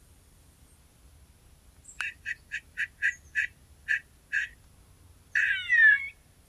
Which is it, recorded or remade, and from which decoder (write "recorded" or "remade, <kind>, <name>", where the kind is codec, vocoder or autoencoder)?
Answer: recorded